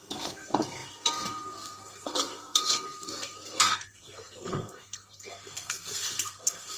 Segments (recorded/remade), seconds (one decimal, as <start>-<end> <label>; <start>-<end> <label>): 0.0-6.8 remade